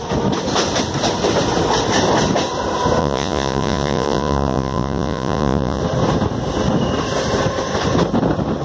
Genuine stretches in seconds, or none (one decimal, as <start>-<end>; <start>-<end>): 0.0-3.0; 5.8-8.6